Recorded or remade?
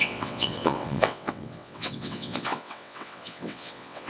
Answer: remade